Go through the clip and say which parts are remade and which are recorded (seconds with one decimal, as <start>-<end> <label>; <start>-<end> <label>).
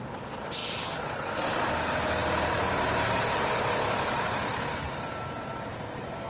0.0-6.3 recorded